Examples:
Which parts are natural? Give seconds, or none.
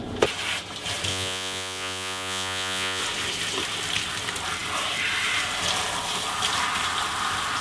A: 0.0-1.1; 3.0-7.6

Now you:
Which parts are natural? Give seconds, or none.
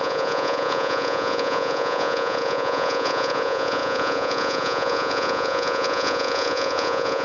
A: none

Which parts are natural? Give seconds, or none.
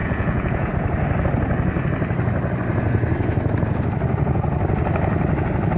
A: 0.7-5.8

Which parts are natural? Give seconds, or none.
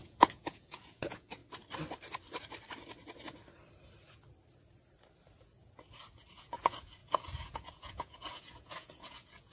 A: 1.4-6.3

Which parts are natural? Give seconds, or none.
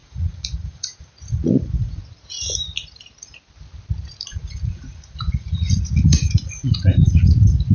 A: 2.0-4.3; 7.3-7.7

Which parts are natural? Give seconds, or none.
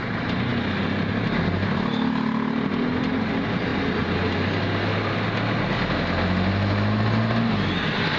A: 0.0-8.2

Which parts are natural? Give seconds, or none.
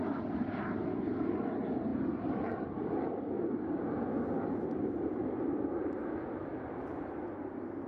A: 0.0-7.9